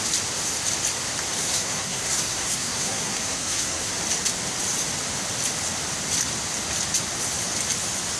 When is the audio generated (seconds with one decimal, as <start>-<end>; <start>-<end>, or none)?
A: 1.4-3.9